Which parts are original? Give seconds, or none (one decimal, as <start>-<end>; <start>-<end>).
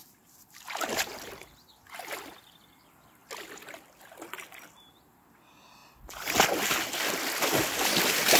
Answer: 1.1-8.4